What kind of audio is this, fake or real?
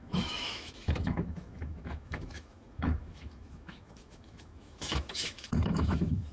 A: fake